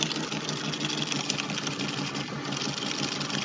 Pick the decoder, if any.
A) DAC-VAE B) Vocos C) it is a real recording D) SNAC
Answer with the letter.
C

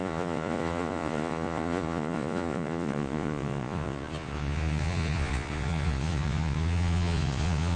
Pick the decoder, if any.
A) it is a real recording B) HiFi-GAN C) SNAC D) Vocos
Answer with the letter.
D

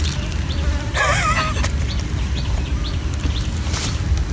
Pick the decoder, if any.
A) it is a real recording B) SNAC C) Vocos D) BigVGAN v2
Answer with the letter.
A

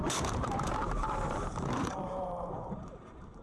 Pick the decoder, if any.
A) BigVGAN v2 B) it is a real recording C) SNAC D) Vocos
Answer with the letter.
A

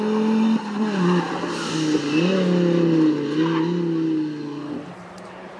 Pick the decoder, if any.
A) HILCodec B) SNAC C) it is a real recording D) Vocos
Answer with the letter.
C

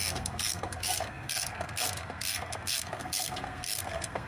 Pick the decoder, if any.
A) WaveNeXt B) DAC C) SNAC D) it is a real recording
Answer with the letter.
C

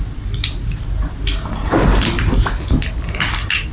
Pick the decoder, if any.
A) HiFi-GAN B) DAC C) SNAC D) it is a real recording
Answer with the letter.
D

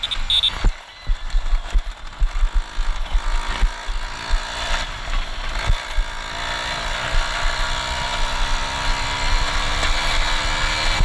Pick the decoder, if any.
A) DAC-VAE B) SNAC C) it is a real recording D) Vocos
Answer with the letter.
C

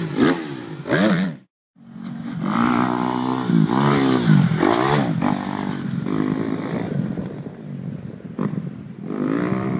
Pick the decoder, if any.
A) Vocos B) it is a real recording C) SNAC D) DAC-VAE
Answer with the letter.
B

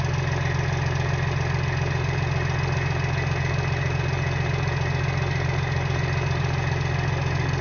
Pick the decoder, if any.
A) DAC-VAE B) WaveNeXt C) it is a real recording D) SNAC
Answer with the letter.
C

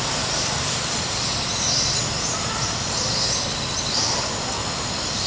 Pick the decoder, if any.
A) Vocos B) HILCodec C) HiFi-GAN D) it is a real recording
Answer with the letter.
D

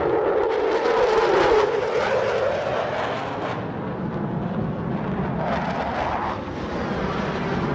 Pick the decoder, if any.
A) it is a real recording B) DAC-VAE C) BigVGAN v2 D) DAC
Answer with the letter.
A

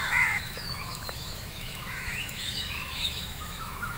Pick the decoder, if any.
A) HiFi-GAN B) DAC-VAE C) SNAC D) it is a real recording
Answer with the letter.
B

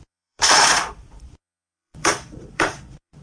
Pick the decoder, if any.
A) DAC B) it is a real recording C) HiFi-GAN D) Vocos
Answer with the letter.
D